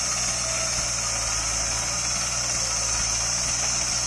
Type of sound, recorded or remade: recorded